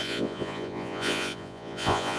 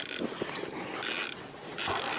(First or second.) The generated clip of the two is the first